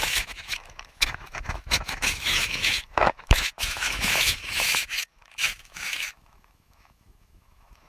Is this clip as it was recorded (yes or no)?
no